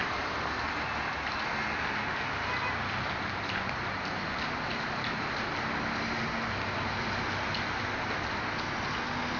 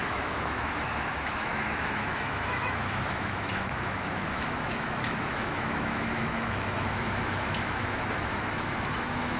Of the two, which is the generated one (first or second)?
second